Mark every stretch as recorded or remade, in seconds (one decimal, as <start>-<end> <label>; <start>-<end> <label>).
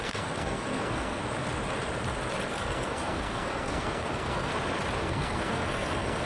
0.0-1.2 remade; 1.2-2.5 recorded; 2.5-4.5 remade; 4.5-5.0 recorded; 5.0-6.3 remade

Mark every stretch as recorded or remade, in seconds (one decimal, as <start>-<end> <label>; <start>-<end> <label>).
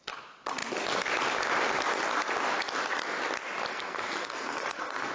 0.0-3.7 recorded; 3.7-5.1 remade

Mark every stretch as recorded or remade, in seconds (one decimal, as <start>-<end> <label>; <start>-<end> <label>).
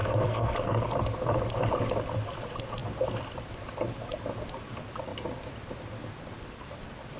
0.0-0.9 remade; 0.9-7.2 recorded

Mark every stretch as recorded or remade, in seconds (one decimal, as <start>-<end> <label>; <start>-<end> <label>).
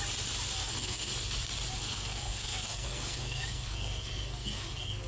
0.0-0.6 recorded; 0.6-1.1 remade; 1.1-1.8 recorded; 1.8-5.1 remade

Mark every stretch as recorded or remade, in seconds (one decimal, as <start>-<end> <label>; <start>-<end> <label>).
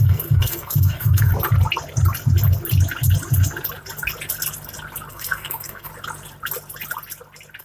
0.0-1.3 remade; 1.3-5.1 recorded; 5.1-5.9 remade; 5.9-7.6 recorded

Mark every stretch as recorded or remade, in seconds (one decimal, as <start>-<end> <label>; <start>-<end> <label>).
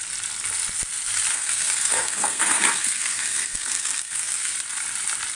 0.0-1.3 recorded; 1.3-4.5 remade; 4.5-5.3 recorded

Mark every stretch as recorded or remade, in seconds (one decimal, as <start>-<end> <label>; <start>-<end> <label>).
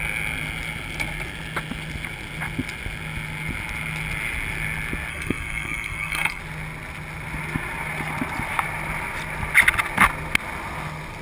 0.0-5.1 recorded; 5.1-6.4 remade; 6.4-11.2 recorded